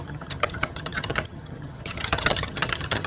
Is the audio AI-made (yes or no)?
yes